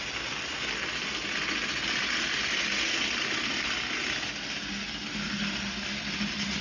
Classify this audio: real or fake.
real